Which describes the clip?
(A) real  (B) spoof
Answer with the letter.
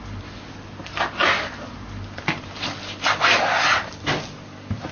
A